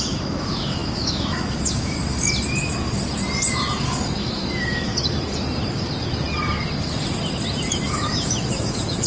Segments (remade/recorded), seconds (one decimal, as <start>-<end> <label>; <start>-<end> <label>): 0.0-2.0 remade; 2.0-4.2 recorded; 4.2-4.9 remade; 4.9-7.7 recorded; 7.7-9.1 remade